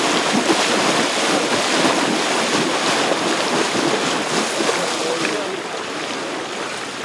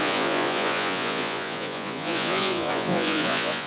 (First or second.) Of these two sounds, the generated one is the second